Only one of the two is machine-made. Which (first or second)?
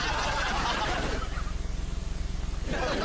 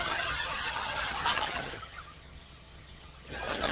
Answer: second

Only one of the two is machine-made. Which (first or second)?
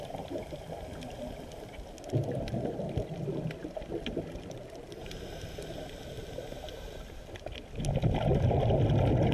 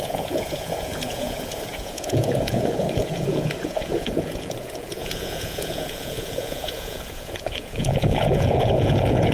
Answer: second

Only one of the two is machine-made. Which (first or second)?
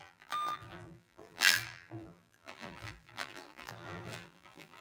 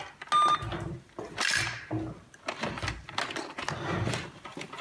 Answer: first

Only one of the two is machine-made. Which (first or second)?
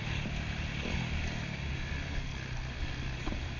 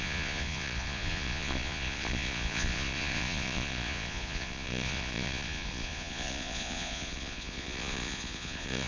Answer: second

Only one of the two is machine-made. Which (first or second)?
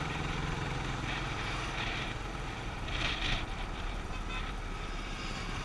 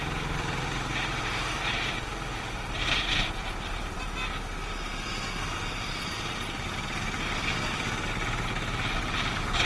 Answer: first